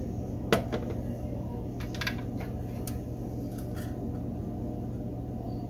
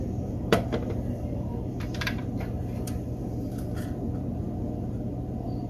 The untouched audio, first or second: first